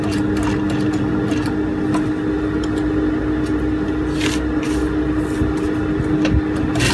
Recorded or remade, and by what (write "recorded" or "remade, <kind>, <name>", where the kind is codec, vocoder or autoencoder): recorded